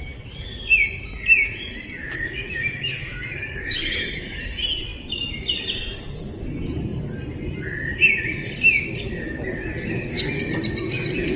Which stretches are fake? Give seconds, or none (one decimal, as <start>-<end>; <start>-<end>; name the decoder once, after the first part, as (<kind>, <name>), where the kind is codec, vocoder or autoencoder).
2.0-4.0 (autoencoder, DAC-VAE)